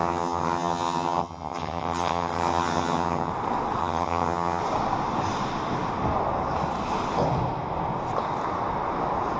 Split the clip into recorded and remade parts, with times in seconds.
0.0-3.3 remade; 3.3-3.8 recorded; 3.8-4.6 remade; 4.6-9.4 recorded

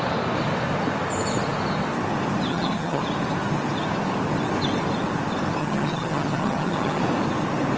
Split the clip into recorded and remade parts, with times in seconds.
0.0-2.5 recorded; 2.5-3.0 remade; 3.0-5.6 recorded; 5.6-7.0 remade; 7.0-7.8 recorded

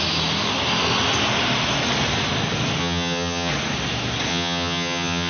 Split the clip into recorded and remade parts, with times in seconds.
0.0-2.8 recorded; 2.8-3.5 remade; 3.5-4.3 recorded; 4.3-5.3 remade

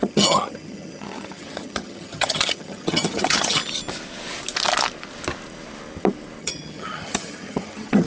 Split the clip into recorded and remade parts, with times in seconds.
0.0-3.6 remade; 3.6-6.4 recorded; 6.4-8.1 remade

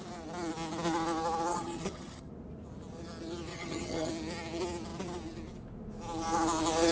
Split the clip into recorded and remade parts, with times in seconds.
0.0-1.5 recorded; 1.5-2.3 remade; 2.3-3.5 recorded; 3.5-4.1 remade; 4.1-6.9 recorded